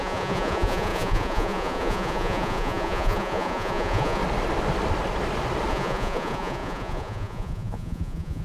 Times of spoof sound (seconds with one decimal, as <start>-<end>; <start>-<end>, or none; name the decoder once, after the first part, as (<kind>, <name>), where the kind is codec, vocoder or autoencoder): 0.0-4.2 (vocoder, Vocos); 5.7-8.4